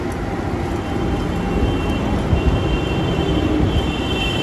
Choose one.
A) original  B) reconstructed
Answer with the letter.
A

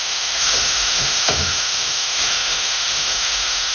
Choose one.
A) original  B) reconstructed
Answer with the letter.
B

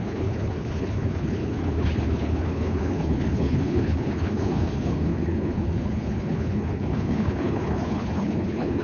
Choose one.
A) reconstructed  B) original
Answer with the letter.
A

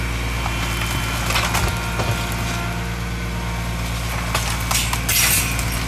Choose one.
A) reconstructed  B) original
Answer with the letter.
B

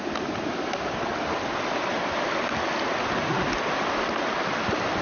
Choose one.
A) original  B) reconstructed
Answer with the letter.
A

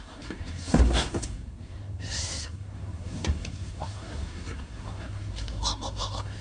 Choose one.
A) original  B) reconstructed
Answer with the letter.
B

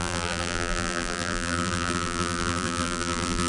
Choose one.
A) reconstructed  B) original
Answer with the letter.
A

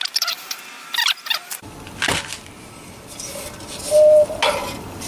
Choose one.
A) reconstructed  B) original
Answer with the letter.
B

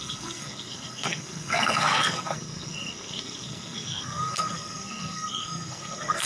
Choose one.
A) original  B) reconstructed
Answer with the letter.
B